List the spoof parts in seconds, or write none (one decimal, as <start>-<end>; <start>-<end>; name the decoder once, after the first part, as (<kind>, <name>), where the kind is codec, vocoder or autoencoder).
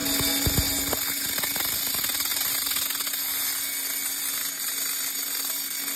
none